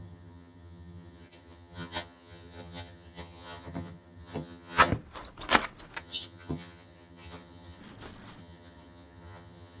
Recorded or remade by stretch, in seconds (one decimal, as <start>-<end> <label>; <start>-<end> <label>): 0.0-4.9 remade; 4.9-6.0 recorded; 6.0-7.8 remade; 7.8-8.4 recorded; 8.4-9.8 remade